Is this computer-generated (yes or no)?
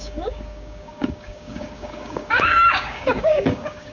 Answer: yes